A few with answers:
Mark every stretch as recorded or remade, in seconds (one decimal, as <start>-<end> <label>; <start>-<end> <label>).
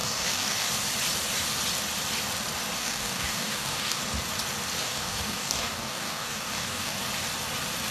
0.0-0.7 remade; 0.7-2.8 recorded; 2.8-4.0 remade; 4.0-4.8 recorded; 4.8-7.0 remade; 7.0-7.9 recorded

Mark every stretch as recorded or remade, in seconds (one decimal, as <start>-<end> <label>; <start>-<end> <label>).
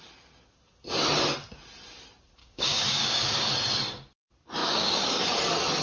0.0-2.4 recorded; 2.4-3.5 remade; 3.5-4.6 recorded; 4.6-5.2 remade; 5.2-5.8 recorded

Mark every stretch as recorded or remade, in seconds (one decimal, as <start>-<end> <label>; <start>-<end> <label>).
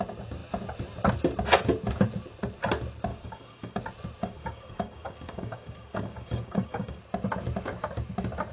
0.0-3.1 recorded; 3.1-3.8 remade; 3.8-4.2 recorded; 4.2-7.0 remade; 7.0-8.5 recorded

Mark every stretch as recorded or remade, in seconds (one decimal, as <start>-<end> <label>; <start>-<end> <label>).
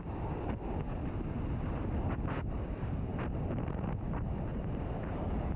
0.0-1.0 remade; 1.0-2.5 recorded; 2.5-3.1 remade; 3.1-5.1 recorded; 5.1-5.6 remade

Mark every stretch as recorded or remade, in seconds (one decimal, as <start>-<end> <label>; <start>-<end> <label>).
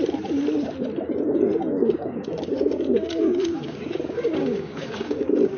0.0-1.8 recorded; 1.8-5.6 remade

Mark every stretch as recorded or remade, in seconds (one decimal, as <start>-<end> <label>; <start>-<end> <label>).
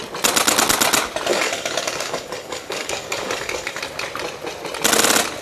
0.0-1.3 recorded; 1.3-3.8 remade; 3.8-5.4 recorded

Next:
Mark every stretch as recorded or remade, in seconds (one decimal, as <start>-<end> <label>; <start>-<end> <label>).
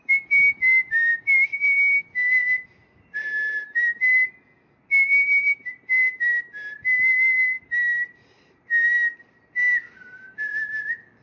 0.0-11.2 recorded